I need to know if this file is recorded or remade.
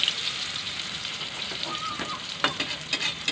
remade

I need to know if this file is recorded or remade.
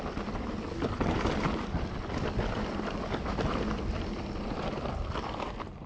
remade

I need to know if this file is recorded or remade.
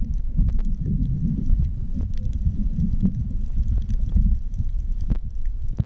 remade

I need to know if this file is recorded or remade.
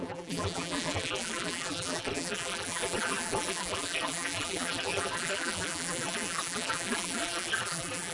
remade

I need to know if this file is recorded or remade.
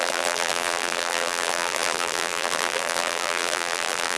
remade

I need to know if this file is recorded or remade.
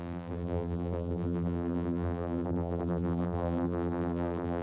remade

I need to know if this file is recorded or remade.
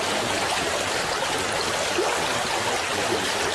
recorded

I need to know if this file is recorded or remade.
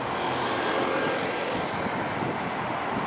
recorded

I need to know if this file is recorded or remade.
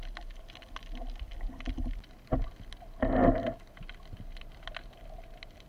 recorded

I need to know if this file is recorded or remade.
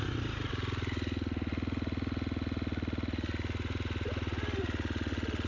recorded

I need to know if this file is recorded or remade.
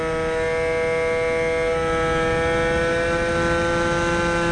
recorded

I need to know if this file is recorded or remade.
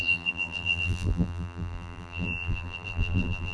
remade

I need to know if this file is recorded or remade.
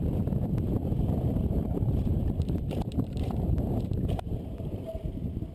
remade